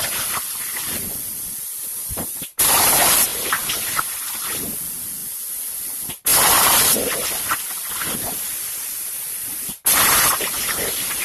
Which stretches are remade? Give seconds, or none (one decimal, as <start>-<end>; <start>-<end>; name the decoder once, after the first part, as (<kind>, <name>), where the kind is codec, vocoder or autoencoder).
0.0-3.3 (vocoder, BigVGAN v2); 4.1-6.3; 6.8-11.2